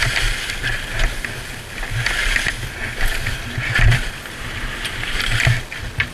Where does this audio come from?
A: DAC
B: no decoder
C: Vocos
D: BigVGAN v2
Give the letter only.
B